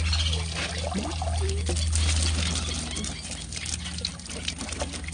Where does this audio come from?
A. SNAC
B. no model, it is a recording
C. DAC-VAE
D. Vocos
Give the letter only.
B